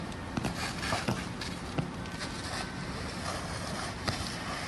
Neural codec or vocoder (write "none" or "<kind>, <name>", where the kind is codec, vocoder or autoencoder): none